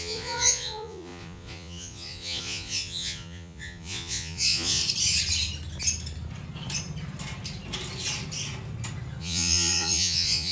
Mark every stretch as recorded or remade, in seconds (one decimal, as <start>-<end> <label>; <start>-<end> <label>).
0.0-4.8 remade; 4.8-9.2 recorded; 9.2-10.5 remade